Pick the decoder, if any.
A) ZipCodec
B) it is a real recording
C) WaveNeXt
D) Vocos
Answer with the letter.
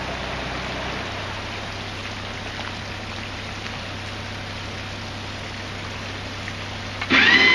B